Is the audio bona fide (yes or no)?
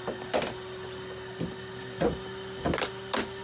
yes